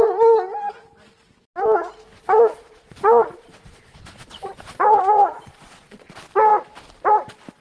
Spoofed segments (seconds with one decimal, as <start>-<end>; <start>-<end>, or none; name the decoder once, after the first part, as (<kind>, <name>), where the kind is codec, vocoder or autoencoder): 2.1-6.1 (vocoder, Vocos)